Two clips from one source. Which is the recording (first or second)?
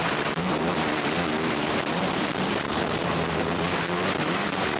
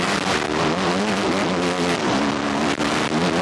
second